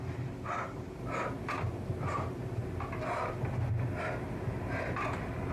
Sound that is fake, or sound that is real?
real